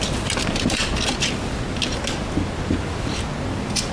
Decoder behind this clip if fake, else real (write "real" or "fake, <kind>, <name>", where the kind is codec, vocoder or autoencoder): real